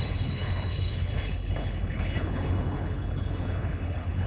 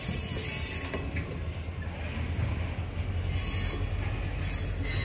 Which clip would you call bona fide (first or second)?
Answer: second